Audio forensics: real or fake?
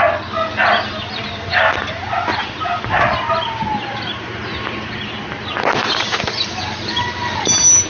real